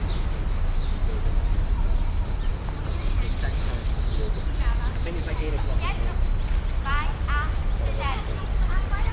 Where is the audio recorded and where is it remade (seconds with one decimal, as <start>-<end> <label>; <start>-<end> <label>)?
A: 0.0-9.1 recorded